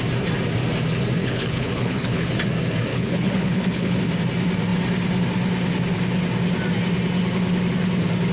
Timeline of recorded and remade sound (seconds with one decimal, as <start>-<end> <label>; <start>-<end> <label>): 0.0-1.2 recorded; 1.2-2.3 remade; 2.3-2.9 recorded; 2.9-4.0 remade; 4.0-8.3 recorded